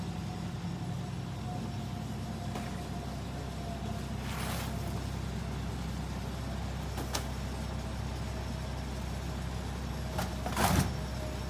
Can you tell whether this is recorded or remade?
recorded